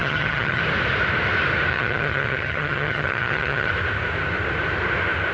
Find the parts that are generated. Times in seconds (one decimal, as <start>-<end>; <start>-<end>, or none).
0.0-0.6; 1.7-3.7